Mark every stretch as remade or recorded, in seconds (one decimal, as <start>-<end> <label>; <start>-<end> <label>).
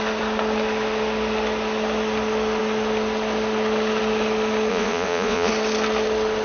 0.0-4.7 recorded; 4.7-5.5 remade; 5.5-6.4 recorded